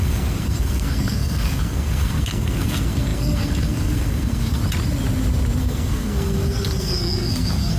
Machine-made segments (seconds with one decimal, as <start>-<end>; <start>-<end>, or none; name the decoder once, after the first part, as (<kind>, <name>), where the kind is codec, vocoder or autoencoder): 0.0-4.6 (codec, SNAC); 5.6-7.8

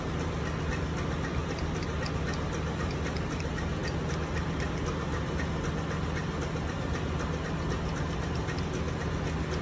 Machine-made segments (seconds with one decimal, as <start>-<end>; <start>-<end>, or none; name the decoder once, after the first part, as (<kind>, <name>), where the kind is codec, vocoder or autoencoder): none

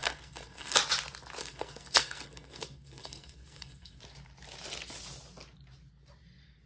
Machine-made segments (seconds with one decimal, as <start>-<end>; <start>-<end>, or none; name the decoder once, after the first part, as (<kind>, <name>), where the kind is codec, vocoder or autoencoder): 0.0-0.8 (codec, SNAC); 1.4-4.0

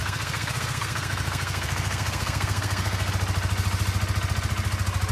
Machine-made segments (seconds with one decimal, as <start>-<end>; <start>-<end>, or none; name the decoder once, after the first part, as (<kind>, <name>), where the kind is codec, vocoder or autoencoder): 0.0-3.1 (codec, SNAC)

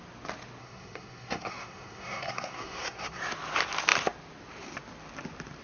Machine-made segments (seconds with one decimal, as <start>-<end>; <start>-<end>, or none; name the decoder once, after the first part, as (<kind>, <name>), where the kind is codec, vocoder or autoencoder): 0.6-3.2 (codec, SNAC)

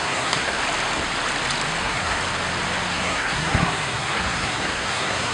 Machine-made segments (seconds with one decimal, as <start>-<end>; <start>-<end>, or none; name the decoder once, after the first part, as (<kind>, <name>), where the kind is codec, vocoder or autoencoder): 0.0-0.6 (codec, SNAC); 1.8-2.2; 2.9-5.3

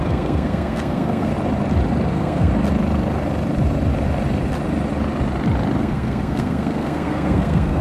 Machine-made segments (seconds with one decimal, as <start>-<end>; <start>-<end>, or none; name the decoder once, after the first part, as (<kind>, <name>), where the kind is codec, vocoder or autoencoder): 0.0-1.3 (codec, SNAC); 2.1-2.5; 5.8-7.8